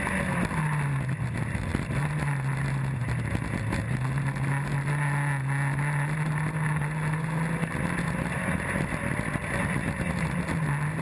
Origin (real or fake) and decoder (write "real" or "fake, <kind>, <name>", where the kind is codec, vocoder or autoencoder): real